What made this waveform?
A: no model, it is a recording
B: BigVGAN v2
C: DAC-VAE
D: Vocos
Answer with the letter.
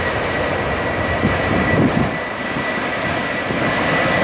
A